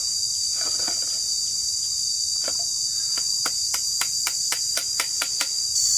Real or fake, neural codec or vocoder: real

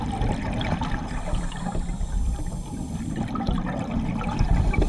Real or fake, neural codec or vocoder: fake, vocoder, BigVGAN v2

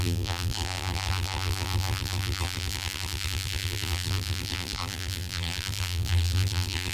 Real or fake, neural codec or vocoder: fake, vocoder, BigVGAN v2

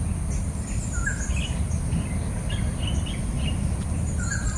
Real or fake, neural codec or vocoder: real